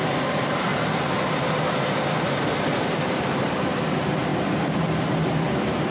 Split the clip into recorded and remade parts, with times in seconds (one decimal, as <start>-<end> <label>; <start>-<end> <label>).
0.0-4.3 remade; 4.3-4.9 recorded; 4.9-5.9 remade